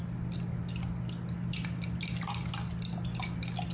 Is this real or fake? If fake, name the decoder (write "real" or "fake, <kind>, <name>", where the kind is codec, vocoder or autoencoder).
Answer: real